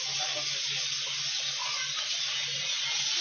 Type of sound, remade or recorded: recorded